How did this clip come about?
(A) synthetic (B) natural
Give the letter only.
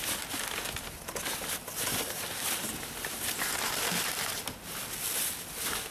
B